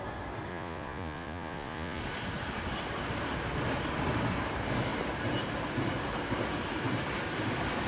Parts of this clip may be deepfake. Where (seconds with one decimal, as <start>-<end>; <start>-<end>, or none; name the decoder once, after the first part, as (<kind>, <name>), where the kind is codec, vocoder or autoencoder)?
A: 0.5-2.0 (vocoder, Vocos)